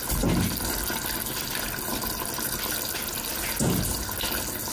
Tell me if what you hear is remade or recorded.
recorded